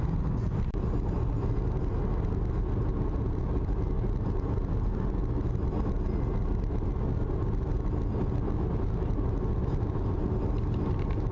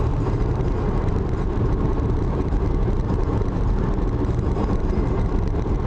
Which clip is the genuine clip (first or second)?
first